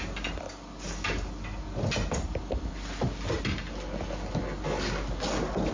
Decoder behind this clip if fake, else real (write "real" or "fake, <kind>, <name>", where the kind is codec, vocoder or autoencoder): real